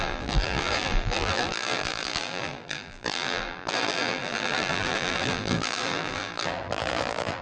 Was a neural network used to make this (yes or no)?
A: yes